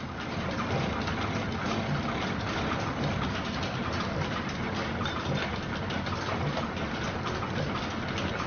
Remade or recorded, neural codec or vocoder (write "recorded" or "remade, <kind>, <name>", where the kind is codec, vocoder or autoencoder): recorded